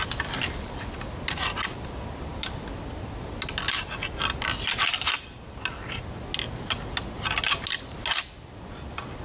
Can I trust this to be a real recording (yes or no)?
yes